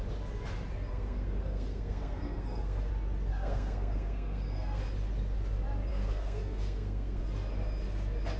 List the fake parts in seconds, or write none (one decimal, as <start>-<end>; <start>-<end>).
0.9-2.9; 3.3-4.8; 5.9-7.2